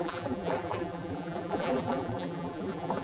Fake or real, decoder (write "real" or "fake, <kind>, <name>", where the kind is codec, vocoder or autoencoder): fake, vocoder, BigVGAN v2